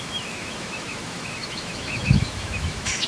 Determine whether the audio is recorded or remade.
remade